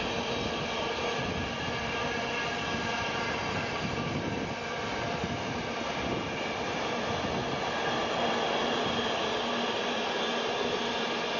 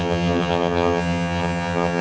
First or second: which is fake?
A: second